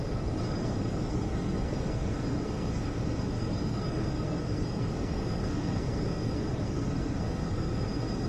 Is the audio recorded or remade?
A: remade